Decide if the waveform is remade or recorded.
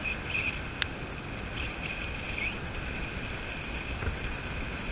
recorded